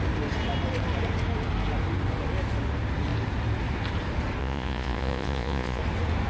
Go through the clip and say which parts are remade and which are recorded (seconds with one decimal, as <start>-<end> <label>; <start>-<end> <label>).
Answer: 0.0-4.4 recorded; 4.4-5.8 remade; 5.8-6.3 recorded